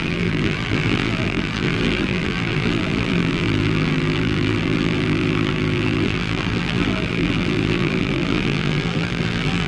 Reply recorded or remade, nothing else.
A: remade